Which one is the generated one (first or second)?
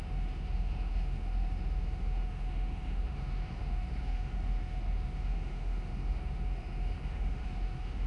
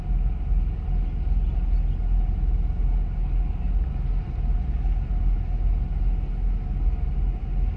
first